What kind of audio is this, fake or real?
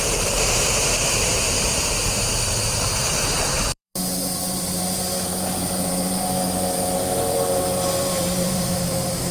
fake